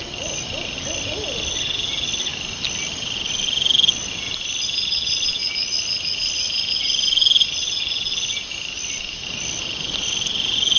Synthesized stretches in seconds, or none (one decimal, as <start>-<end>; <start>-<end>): none